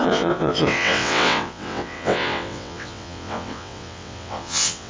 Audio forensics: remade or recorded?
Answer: remade